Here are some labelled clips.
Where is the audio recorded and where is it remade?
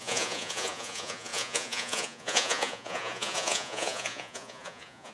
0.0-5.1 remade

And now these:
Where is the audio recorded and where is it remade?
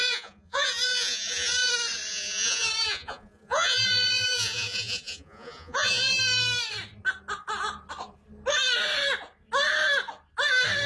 0.0-1.7 remade; 1.7-2.1 recorded; 2.1-6.2 remade; 6.2-10.9 recorded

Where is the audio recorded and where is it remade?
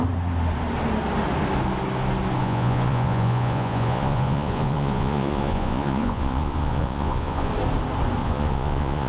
0.0-2.4 recorded; 2.4-7.5 remade; 7.5-8.2 recorded; 8.2-9.1 remade